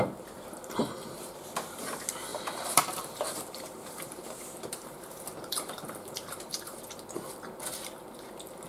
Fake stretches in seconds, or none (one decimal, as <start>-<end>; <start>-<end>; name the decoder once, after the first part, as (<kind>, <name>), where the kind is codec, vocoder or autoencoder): 2.3-6.8 (vocoder, BigVGAN v2)